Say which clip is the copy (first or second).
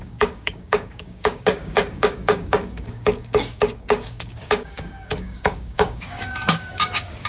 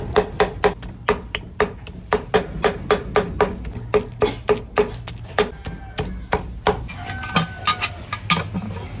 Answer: first